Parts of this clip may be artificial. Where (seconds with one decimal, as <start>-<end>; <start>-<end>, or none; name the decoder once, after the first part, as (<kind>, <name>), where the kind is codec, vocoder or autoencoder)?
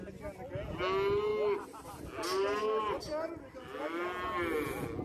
none